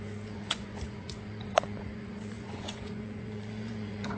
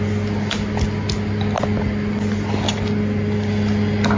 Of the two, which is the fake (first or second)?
first